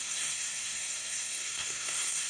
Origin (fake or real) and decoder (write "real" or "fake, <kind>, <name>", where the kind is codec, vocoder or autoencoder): fake, codec, SNAC